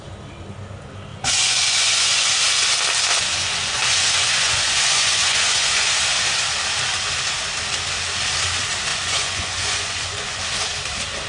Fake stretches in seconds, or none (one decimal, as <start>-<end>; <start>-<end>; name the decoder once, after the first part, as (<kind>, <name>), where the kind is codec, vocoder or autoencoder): 1.1-2.3 (vocoder, Vocos); 3.1-5.9; 8.9-10.4